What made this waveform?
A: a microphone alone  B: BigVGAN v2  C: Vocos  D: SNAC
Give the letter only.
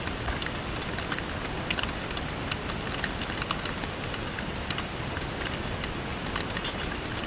A